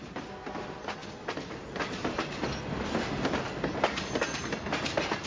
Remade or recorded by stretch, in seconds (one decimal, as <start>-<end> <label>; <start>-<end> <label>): 0.0-5.3 recorded